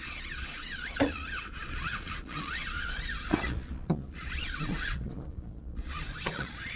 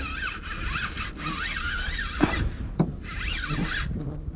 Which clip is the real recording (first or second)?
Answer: second